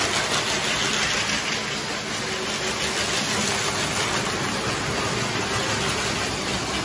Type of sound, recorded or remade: recorded